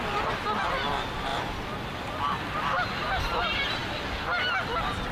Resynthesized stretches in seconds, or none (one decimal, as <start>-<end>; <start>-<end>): none